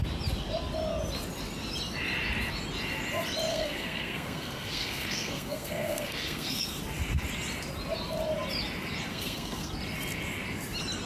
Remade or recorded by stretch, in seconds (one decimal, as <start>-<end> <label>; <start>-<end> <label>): 0.0-3.5 recorded; 3.5-6.8 remade; 6.8-9.1 recorded; 9.1-9.7 remade; 9.7-11.1 recorded